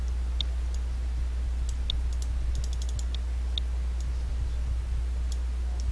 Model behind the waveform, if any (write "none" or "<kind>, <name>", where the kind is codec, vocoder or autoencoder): none